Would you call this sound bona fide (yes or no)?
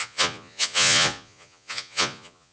no